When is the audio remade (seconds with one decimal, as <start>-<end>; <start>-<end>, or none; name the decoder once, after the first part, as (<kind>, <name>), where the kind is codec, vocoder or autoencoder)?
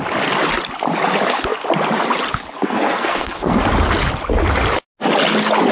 2.6-3.6 (codec, SNAC)